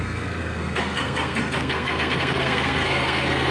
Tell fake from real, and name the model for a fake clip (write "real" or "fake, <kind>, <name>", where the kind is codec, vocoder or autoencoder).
fake, codec, SNAC